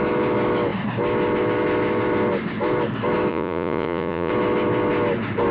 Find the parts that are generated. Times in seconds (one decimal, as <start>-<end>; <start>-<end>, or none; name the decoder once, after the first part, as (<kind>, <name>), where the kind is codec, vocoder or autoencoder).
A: 3.3-4.3 (vocoder, Vocos)